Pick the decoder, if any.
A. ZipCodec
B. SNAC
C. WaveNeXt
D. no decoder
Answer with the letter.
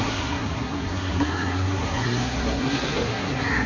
B